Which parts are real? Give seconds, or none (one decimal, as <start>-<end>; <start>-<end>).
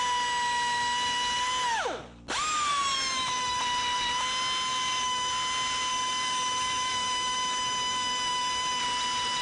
0.0-2.7; 3.6-4.7; 5.3-5.9; 8.8-9.4